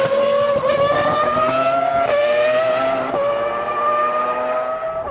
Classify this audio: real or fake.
real